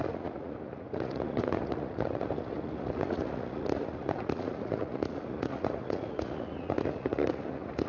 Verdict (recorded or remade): remade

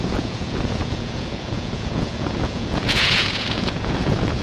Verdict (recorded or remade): remade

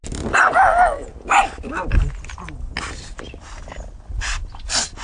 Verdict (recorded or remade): recorded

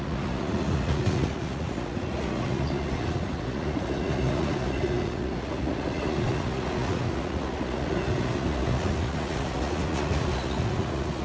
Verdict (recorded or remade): remade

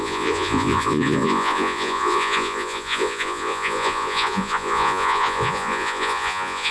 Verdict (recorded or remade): remade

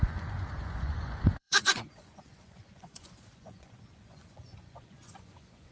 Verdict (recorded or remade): remade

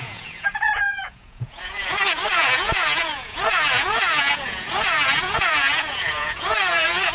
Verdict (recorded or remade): remade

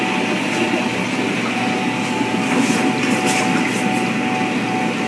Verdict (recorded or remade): recorded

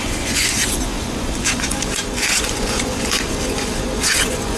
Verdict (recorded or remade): remade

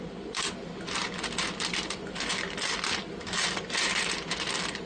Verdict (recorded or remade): recorded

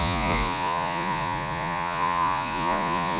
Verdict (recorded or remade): remade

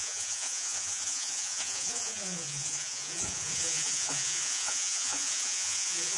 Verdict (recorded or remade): remade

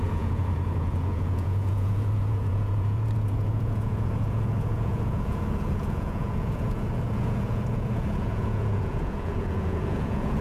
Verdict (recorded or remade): remade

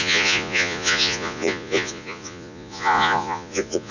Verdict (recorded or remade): remade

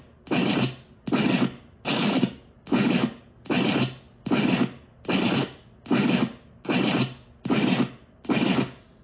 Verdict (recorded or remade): recorded